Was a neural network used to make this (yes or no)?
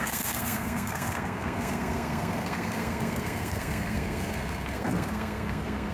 yes